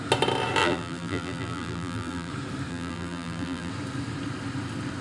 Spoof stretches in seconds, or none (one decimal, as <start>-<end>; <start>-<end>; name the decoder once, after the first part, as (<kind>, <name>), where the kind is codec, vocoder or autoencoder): 0.6-2.3 (vocoder, BigVGAN v2); 2.7-3.7